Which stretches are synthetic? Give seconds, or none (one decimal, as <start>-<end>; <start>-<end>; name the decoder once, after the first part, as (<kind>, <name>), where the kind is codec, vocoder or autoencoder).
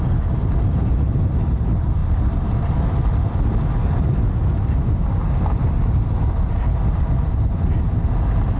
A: none